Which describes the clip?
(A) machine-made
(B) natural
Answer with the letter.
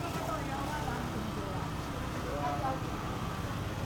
B